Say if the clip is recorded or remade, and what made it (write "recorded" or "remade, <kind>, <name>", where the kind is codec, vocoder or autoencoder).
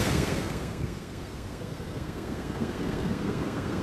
remade, codec, SNAC